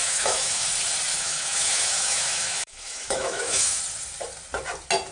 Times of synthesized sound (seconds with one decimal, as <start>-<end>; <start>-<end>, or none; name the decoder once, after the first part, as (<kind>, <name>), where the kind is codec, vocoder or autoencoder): 0.0-0.7 (autoencoder, DAC-VAE); 1.1-3.8